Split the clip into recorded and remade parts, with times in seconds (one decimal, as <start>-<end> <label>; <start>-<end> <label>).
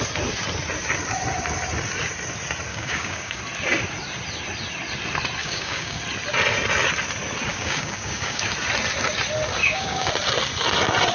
0.0-2.7 recorded; 2.7-3.4 remade; 3.4-5.4 recorded; 5.4-6.0 remade; 6.0-7.5 recorded; 7.5-8.4 remade; 8.4-9.6 recorded; 9.6-10.1 remade; 10.1-11.1 recorded